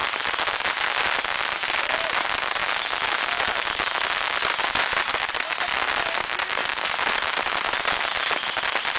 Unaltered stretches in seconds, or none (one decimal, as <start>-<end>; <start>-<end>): 0.0-9.0